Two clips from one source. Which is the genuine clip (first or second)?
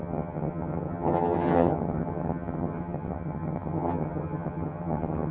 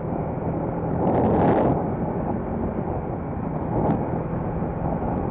second